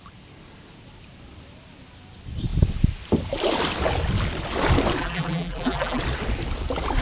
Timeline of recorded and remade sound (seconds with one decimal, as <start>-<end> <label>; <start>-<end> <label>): 0.0-5.0 recorded; 5.0-6.0 remade; 6.0-7.0 recorded